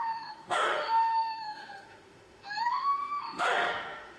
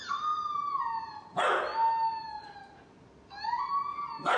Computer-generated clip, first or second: first